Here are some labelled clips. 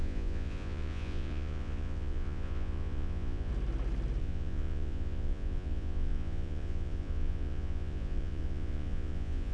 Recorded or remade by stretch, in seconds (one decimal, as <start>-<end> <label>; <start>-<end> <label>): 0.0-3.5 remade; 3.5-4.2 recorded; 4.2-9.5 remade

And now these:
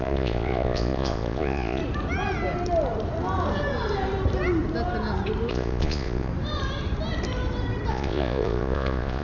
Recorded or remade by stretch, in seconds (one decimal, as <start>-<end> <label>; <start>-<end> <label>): 0.0-1.8 remade; 1.8-5.5 recorded; 5.5-6.3 remade; 6.3-7.9 recorded; 7.9-9.2 remade

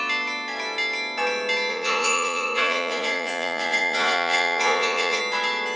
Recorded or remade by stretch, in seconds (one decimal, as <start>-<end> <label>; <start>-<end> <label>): 0.0-1.7 recorded; 1.7-5.2 remade; 5.2-5.8 recorded

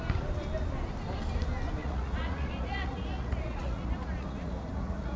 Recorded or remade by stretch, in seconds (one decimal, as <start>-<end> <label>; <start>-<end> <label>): 0.0-1.8 recorded; 1.8-5.2 remade

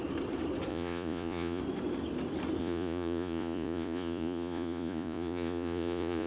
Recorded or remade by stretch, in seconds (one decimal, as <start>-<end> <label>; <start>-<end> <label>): 0.0-0.7 recorded; 0.7-1.6 remade; 1.6-2.6 recorded; 2.6-6.3 remade